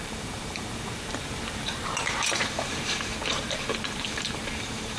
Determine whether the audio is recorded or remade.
remade